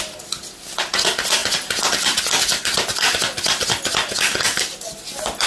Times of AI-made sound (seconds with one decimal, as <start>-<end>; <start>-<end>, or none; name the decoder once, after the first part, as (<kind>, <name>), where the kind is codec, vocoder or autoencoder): none